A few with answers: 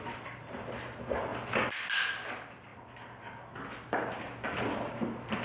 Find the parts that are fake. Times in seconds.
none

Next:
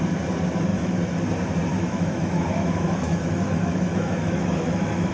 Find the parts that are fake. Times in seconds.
0.7-1.2 (autoencoder, DAC-VAE); 1.7-5.1

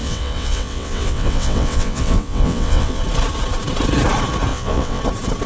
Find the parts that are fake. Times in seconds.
0.0-3.0 (vocoder, WaveNeXt); 4.5-5.0

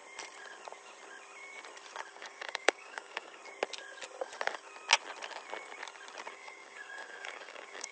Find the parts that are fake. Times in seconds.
2.1-3.4 (codec, DAC); 6.3-7.9

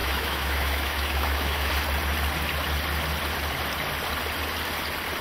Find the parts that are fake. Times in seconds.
0.0-1.7 (autoencoder, DAC-VAE)